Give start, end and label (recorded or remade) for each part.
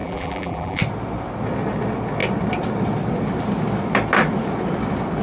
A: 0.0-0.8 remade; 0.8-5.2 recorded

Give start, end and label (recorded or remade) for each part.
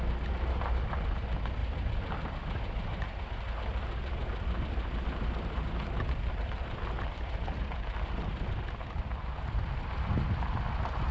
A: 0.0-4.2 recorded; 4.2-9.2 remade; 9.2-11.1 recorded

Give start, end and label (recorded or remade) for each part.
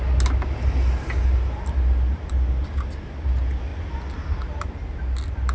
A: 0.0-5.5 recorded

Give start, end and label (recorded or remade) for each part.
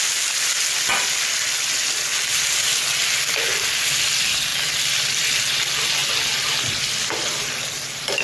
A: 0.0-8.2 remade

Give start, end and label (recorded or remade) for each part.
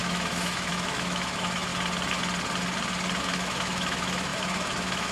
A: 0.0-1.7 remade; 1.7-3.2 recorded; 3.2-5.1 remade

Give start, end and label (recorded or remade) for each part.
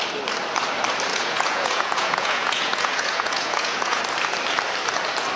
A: 0.0-1.1 recorded; 1.1-4.0 remade; 4.0-5.4 recorded